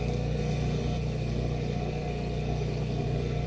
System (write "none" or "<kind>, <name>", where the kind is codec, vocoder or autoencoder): codec, SNAC